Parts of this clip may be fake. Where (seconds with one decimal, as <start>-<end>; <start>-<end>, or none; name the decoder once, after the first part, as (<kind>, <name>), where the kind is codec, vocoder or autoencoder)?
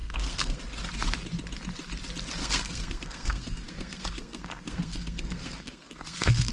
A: 0.0-0.6 (codec, SNAC); 2.4-6.5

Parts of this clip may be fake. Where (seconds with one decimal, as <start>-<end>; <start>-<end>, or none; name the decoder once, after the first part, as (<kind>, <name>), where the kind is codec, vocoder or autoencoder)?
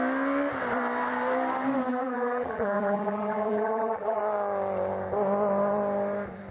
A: 1.9-4.2 (vocoder, BigVGAN v2)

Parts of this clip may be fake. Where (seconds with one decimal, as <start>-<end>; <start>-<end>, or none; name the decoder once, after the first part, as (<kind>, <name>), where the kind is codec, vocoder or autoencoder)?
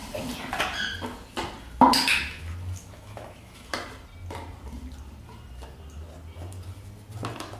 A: 1.9-2.4 (autoencoder, DAC-VAE); 2.8-3.7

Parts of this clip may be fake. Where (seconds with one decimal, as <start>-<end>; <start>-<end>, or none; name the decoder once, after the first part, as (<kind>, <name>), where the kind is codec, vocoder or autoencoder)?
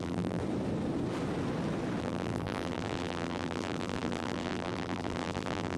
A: 0.0-0.4 (vocoder, BigVGAN v2); 2.0-5.8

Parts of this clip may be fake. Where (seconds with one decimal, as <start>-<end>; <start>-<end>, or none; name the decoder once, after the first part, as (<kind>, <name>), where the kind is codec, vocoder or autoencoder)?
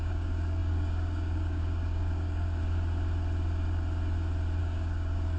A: 0.0-2.6 (codec, DAC); 4.6-5.4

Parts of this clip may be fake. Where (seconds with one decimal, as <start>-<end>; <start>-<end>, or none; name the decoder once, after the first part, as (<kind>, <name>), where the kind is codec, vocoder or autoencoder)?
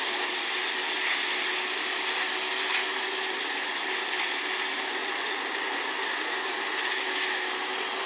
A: none